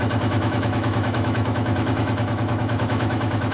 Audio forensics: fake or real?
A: fake